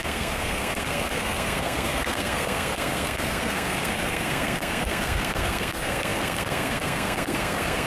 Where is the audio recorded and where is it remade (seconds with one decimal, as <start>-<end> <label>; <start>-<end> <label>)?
0.0-7.9 remade